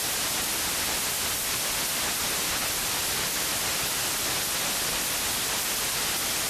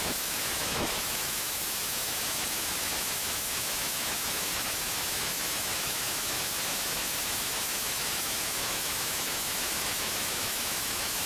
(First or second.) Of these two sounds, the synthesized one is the second